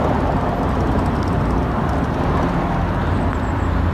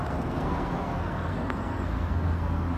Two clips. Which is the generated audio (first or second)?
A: second